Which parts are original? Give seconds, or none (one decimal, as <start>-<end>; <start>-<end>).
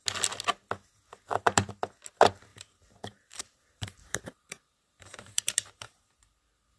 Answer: 0.0-1.3; 1.8-2.5